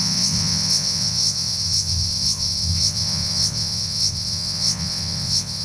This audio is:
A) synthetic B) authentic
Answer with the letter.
A